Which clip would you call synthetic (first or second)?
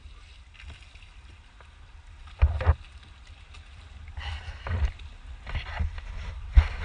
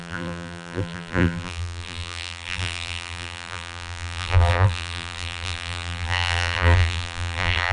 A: second